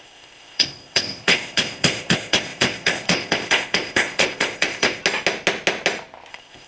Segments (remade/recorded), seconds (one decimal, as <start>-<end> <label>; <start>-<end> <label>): 0.0-5.0 remade; 5.0-6.3 recorded; 6.3-6.7 remade